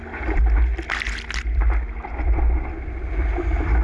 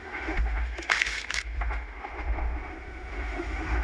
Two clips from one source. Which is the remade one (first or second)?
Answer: second